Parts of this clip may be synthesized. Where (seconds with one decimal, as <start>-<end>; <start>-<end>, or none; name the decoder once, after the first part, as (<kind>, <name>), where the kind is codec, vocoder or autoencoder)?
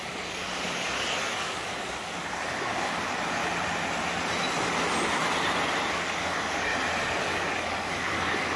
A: 0.0-3.4 (codec, DAC); 5.9-6.7; 7.2-8.6